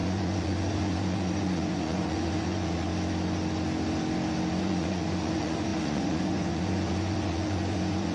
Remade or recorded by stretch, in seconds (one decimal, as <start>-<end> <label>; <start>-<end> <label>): 0.0-2.9 remade; 2.9-4.6 recorded; 4.6-8.1 remade